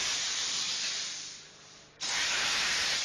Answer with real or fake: fake